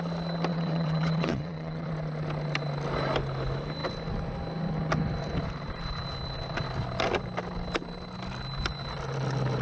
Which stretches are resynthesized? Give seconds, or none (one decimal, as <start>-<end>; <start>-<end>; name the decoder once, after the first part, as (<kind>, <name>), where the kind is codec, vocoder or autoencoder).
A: 0.5-1.9 (vocoder, WaveNeXt)